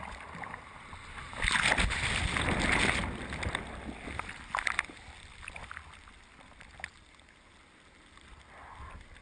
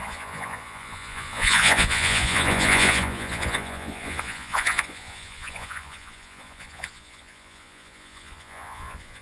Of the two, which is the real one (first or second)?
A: first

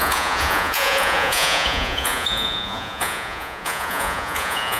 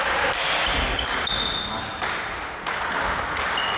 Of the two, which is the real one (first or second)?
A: second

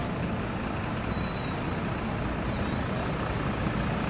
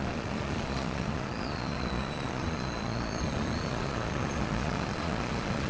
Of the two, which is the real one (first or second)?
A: first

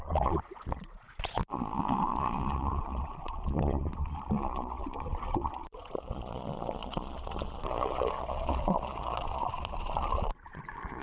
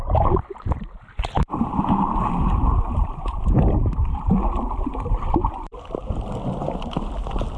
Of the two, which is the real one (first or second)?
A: second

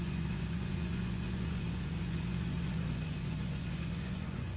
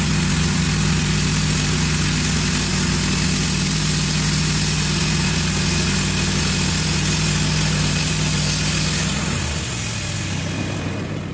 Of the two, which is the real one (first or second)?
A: second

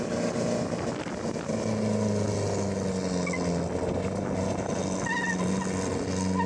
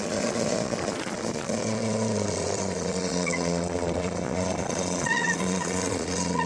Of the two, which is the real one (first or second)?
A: first